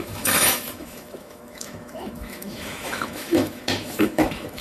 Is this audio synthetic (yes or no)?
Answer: yes